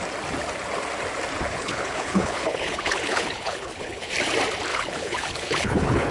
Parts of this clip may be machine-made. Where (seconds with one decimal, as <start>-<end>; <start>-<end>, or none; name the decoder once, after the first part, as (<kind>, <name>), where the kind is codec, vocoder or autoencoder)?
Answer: 1.4-4.1 (codec, HILCodec); 4.7-6.1